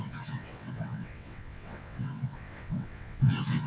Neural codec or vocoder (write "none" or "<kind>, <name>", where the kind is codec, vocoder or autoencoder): vocoder, WaveNeXt